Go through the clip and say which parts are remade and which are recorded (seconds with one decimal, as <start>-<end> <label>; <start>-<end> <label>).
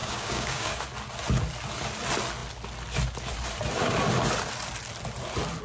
0.0-0.8 remade; 0.8-5.6 recorded